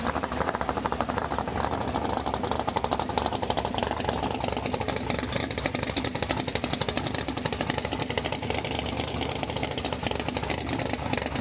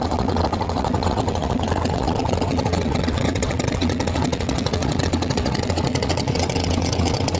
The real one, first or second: first